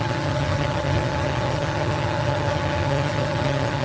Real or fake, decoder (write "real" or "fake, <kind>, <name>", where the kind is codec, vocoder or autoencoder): fake, vocoder, HiFi-GAN